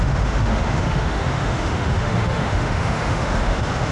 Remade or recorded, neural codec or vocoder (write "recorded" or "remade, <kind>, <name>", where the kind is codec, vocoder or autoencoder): remade, autoencoder, DAC-VAE